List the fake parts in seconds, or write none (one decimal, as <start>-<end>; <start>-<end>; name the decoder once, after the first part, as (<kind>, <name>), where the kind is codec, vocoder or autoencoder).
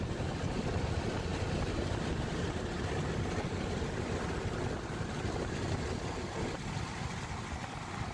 none